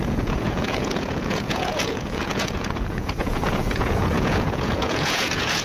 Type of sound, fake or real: fake